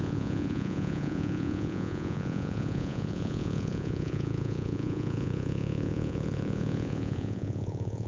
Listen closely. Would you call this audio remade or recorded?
remade